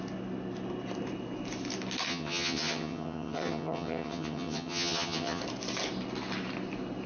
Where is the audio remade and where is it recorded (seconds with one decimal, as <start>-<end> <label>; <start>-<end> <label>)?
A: 0.0-2.1 recorded; 2.1-5.4 remade; 5.4-7.1 recorded